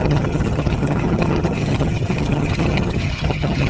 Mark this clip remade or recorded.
remade